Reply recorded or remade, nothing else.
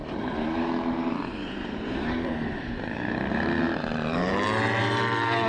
remade